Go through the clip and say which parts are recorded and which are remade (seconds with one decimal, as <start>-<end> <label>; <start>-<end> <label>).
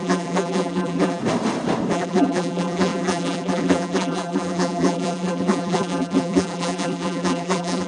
0.0-1.2 remade; 1.2-1.9 recorded; 1.9-7.9 remade